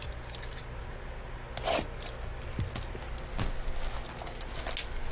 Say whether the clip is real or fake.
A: real